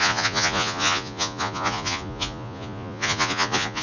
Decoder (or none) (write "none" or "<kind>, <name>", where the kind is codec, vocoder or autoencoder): vocoder, Vocos